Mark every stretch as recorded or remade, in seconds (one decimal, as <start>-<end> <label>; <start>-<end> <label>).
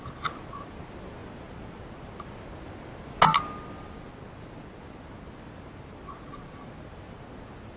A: 0.0-7.8 recorded